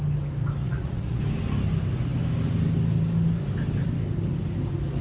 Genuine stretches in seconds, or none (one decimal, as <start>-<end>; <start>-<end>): 0.0-0.6; 1.2-5.0